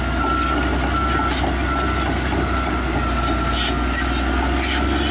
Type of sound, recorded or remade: recorded